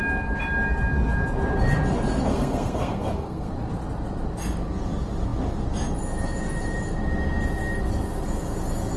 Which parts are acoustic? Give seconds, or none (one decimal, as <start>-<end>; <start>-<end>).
0.0-2.3; 3.5-9.0